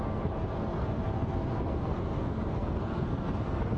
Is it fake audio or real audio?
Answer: fake